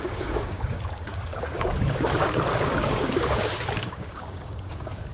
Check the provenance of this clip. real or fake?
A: fake